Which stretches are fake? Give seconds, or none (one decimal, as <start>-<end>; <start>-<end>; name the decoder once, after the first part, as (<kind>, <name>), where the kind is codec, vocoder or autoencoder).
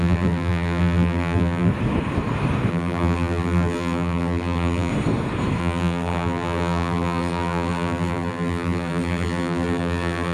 0.0-1.7 (vocoder, BigVGAN v2); 2.7-4.9; 5.6-10.3